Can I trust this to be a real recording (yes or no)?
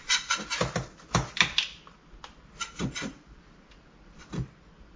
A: yes